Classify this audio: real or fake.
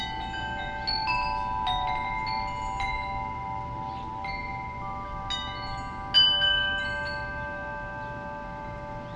real